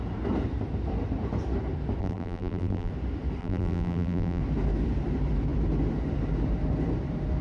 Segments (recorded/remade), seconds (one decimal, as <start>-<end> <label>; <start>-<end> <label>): 0.0-2.0 recorded; 2.0-2.9 remade; 2.9-3.4 recorded; 3.4-4.4 remade; 4.4-7.4 recorded